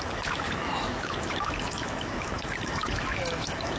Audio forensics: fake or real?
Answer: fake